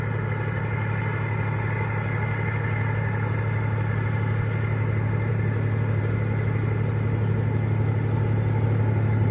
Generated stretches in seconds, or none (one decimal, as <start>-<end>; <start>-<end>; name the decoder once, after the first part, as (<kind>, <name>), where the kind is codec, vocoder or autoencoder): none